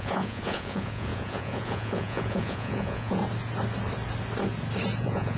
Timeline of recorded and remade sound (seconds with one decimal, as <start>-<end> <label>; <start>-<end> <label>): 0.0-3.2 remade; 3.2-5.0 recorded; 5.0-5.4 remade